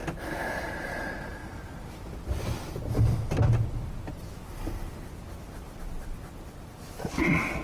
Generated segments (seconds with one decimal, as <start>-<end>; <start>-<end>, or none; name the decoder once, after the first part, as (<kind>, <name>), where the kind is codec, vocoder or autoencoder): 0.0-0.7 (vocoder, BigVGAN v2); 1.4-6.0